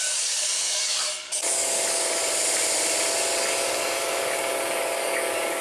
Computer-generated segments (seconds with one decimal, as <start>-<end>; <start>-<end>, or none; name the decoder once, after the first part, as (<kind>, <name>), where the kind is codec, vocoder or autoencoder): 0.0-2.2 (codec, DAC); 3.4-5.6